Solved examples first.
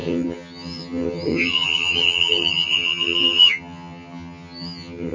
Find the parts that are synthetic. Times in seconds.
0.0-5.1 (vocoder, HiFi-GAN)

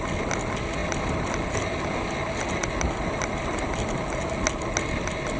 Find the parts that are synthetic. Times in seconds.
none

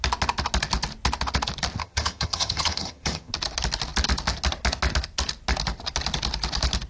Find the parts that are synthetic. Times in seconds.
1.8-3.3 (vocoder, HiFi-GAN)

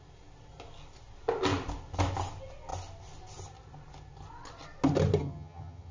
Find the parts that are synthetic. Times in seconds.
5.2-5.9 (vocoder, HiFi-GAN)

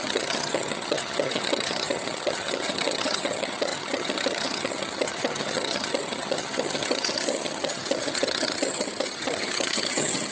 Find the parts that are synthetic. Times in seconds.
0.0-10.3 (vocoder, HiFi-GAN)

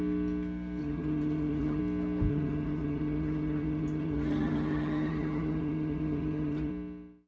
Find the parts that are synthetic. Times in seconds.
0.8-1.8 (vocoder, HiFi-GAN); 2.3-6.7